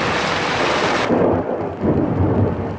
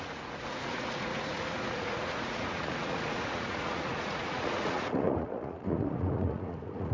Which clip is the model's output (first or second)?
second